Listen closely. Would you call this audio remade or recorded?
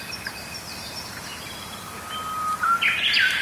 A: recorded